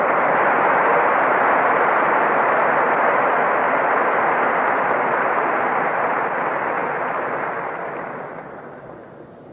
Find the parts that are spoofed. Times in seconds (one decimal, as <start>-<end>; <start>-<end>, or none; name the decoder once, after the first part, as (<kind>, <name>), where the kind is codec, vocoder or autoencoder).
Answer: 0.9-1.9 (vocoder, BigVGAN v2); 6.8-8.8